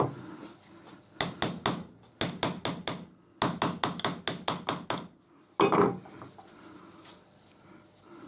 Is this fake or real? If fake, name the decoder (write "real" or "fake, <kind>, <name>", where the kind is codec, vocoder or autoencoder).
real